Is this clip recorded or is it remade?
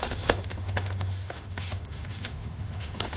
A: remade